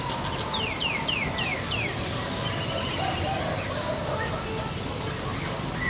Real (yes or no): yes